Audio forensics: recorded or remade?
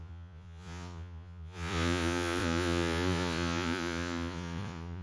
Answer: remade